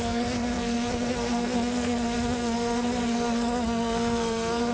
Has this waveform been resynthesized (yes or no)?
yes